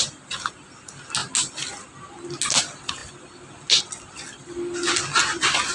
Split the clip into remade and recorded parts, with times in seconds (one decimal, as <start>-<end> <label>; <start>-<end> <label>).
0.0-5.7 recorded